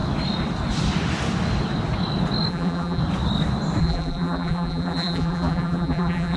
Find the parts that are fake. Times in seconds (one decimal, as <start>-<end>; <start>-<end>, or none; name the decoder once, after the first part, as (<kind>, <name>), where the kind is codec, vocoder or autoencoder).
2.5-3.0 (vocoder, BigVGAN v2); 3.8-6.4

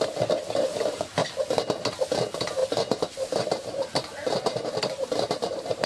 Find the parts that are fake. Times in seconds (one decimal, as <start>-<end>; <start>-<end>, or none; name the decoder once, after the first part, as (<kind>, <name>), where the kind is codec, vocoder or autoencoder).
2.6-5.9 (vocoder, BigVGAN v2)

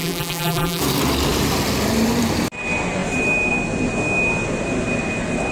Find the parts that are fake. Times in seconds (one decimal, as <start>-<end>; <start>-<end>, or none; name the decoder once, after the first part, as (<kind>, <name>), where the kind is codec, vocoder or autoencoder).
0.0-0.8 (vocoder, BigVGAN v2)

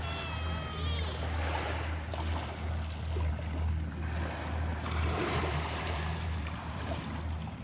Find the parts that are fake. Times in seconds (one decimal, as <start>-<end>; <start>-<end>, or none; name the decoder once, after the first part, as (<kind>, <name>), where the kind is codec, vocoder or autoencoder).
4.7-7.0 (vocoder, BigVGAN v2)

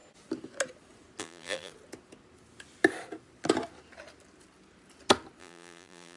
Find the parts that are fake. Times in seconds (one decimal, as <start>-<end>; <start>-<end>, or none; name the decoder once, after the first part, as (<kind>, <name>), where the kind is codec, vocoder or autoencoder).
1.2-1.7 (vocoder, BigVGAN v2); 5.4-6.2